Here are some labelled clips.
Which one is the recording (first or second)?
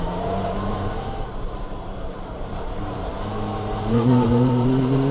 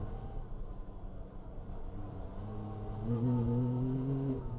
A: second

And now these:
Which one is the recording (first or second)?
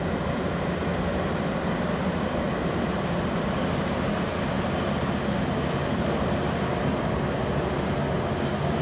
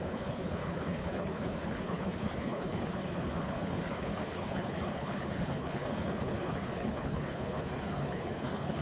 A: first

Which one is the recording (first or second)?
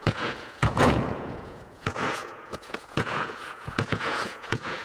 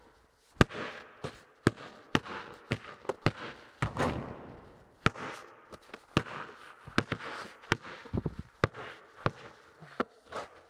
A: second